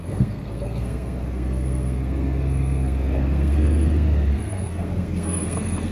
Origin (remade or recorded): remade